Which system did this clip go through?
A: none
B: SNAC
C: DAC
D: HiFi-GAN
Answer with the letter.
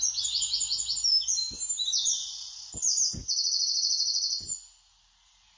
A